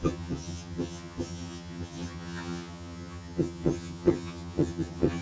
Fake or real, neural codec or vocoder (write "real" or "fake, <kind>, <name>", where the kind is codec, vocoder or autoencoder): fake, vocoder, HiFi-GAN